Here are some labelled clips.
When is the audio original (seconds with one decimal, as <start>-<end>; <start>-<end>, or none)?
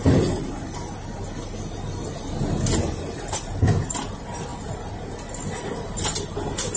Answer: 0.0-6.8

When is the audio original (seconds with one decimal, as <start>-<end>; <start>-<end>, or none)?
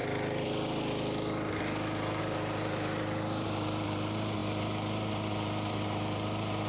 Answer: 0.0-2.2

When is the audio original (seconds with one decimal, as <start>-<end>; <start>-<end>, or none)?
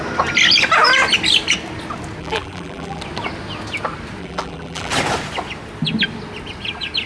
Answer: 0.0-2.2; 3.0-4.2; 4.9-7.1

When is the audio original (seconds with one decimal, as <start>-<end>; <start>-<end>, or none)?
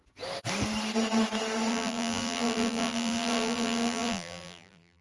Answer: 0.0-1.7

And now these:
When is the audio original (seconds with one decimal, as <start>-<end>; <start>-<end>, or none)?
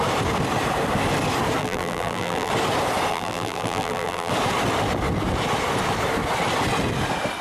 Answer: 0.0-1.6; 2.5-3.1; 4.3-7.4